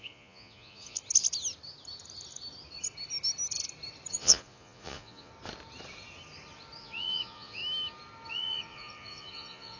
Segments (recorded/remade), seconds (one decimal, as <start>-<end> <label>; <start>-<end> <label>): 0.0-1.0 remade; 1.0-4.1 recorded; 4.1-5.3 remade; 5.3-6.8 recorded; 6.8-7.6 remade; 7.6-8.3 recorded; 8.3-9.8 remade